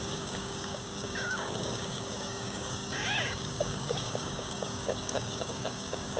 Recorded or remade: remade